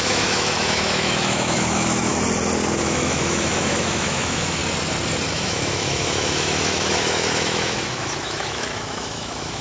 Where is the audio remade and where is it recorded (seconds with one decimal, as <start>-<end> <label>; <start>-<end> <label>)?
0.0-2.1 remade; 2.1-2.8 recorded; 2.8-4.6 remade; 4.6-5.3 recorded; 5.3-9.6 remade